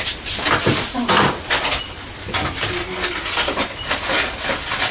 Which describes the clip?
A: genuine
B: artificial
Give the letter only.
A